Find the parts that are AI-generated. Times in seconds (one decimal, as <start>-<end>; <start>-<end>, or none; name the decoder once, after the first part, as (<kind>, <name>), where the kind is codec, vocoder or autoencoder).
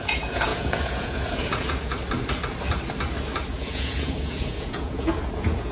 0.0-2.0 (vocoder, Vocos); 3.4-5.7